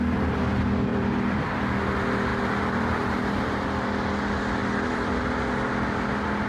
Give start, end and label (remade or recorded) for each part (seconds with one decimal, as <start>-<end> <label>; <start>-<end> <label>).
0.0-0.9 recorded; 0.9-1.6 remade; 1.6-2.3 recorded; 2.3-3.4 remade; 3.4-4.6 recorded; 4.6-5.1 remade; 5.1-6.5 recorded